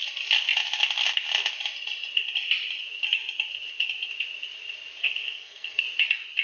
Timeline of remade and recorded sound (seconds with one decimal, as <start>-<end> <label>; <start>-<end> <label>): 0.0-5.0 recorded; 5.0-5.8 remade; 5.8-6.4 recorded